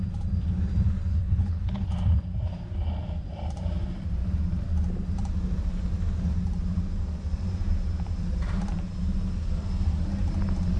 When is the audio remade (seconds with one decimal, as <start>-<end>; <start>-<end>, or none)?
1.1-1.9